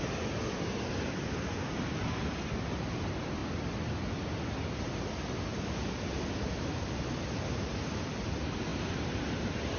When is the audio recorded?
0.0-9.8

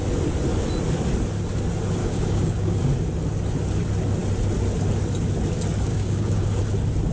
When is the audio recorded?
0.0-2.0; 2.8-5.9; 6.6-7.1

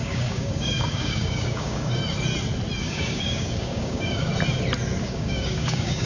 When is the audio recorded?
2.0-2.8; 4.3-5.0